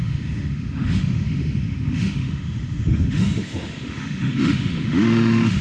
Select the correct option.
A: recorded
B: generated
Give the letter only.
B